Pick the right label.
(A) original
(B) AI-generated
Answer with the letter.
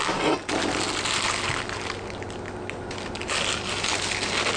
A